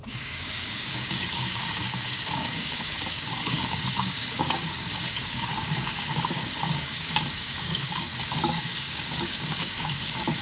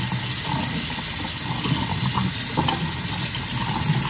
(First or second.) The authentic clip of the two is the second